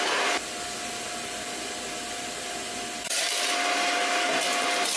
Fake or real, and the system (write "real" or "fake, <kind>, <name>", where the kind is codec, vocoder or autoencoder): real